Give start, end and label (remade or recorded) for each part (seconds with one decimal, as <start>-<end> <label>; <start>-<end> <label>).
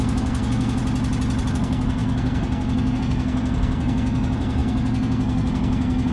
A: 0.0-0.8 remade; 0.8-1.5 recorded; 1.5-6.1 remade